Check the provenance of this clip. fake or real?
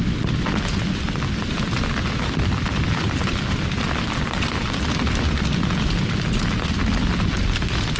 real